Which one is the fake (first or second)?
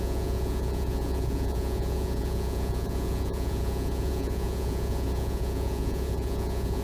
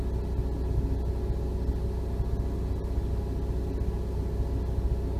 first